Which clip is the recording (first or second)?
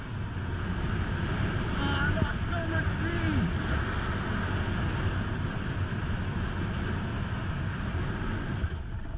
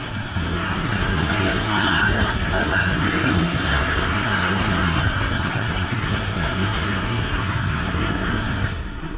first